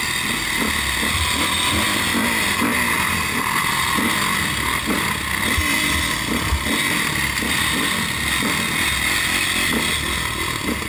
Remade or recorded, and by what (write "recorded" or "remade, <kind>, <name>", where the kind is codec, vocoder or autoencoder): recorded